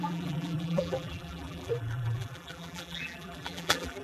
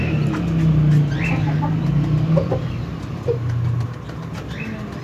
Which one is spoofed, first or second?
first